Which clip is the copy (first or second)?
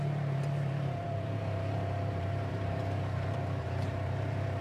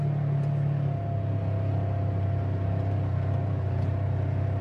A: first